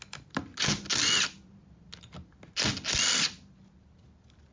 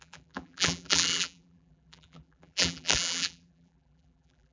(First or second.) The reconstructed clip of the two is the second